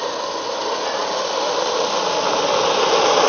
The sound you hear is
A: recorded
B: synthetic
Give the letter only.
A